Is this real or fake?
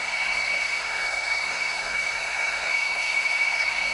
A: fake